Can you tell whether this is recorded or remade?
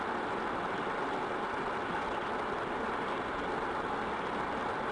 recorded